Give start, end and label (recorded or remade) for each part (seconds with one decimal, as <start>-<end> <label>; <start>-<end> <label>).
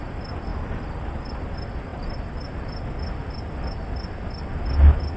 0.0-5.2 recorded